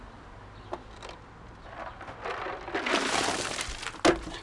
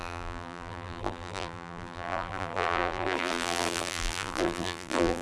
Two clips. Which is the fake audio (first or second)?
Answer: second